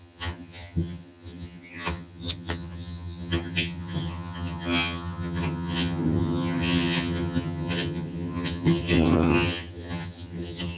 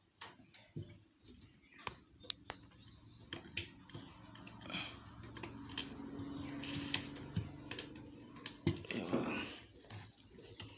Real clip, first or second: second